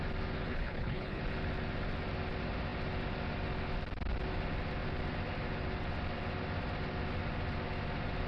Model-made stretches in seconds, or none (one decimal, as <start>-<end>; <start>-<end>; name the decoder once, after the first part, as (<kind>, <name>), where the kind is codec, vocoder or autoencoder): 0.5-1.2 (codec, HILCodec)